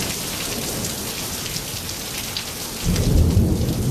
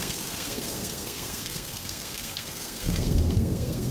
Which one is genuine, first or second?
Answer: first